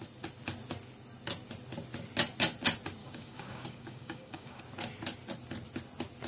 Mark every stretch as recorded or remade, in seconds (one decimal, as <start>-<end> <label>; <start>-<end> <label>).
0.0-3.0 recorded; 3.0-4.6 remade; 4.6-6.3 recorded